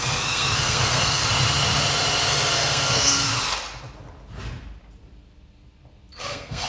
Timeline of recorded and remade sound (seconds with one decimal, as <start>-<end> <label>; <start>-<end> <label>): 0.0-1.2 remade; 1.2-2.3 recorded; 2.3-3.3 remade; 3.3-6.2 recorded; 6.2-6.7 remade